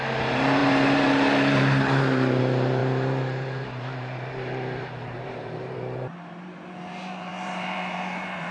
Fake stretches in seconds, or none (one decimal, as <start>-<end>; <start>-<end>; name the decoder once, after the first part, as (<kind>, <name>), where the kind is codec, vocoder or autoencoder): 0.0-8.5 (vocoder, BigVGAN v2)